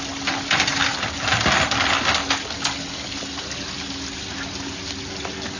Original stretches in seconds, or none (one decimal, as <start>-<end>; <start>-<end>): 0.0-5.6